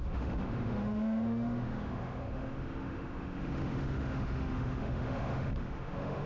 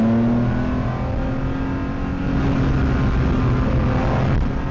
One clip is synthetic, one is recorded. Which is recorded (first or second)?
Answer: second